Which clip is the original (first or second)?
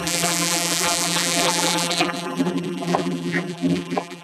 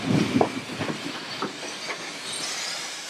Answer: second